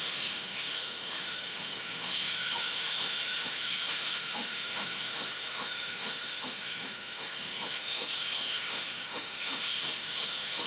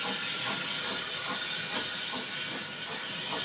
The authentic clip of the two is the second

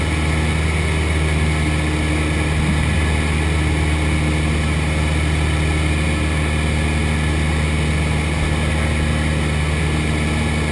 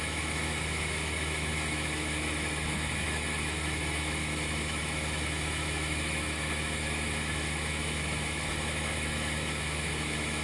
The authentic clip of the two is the first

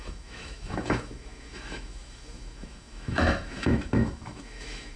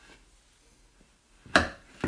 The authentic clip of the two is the second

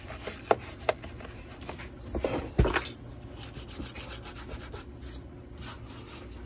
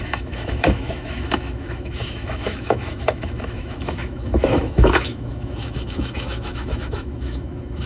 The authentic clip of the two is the first